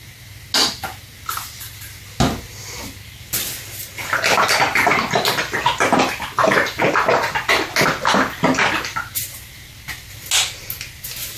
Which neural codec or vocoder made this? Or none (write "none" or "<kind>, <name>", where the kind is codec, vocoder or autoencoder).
none